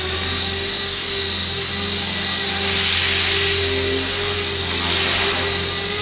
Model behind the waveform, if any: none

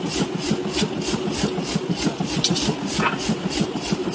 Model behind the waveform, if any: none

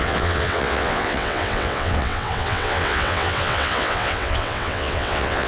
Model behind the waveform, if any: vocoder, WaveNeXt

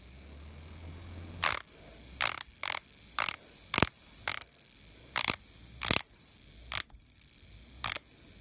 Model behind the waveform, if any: none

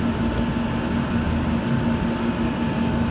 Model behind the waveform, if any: none